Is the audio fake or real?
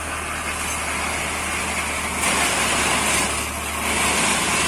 real